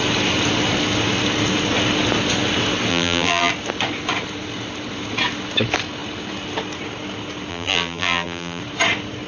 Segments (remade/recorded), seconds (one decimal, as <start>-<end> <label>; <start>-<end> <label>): 0.0-2.9 recorded; 2.9-3.5 remade; 3.5-7.5 recorded; 7.5-8.6 remade; 8.6-9.3 recorded